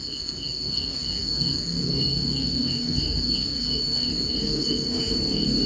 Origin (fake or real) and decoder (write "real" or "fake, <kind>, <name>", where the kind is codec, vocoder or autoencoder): fake, codec, SNAC